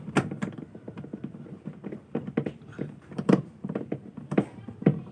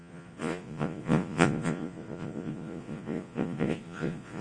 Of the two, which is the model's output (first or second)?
second